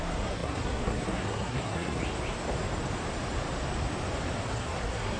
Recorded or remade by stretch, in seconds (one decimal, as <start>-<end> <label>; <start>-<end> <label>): 0.0-2.0 remade; 2.0-4.5 recorded; 4.5-5.2 remade